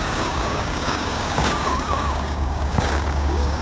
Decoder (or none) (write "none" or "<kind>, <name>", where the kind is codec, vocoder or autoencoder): codec, DAC